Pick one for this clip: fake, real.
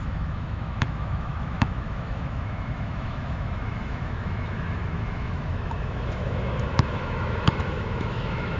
fake